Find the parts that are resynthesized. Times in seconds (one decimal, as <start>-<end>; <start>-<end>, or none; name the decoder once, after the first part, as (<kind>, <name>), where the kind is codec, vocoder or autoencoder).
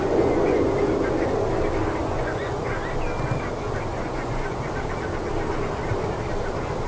0.0-0.6 (vocoder, Vocos); 2.0-2.6; 3.9-4.6